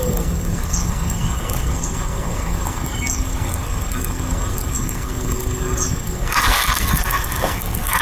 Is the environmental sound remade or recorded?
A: remade